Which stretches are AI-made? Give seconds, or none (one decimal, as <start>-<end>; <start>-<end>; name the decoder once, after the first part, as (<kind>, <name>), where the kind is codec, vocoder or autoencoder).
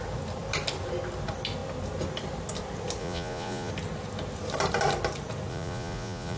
3.0-3.7 (vocoder, Vocos); 5.5-6.4